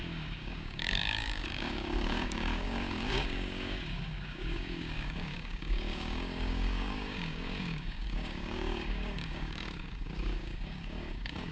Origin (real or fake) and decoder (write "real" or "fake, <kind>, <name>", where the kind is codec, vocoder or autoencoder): fake, codec, DAC